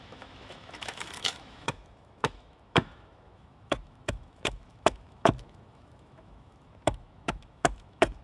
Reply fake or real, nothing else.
fake